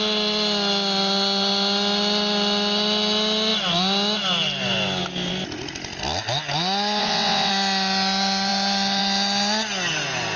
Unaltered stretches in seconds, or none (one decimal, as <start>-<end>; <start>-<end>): 0.0-7.0; 7.5-10.4